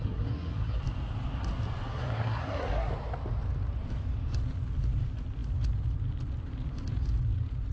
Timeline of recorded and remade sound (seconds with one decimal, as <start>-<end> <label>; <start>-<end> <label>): 0.0-0.8 remade; 0.8-1.9 recorded; 1.9-2.9 remade; 2.9-7.7 recorded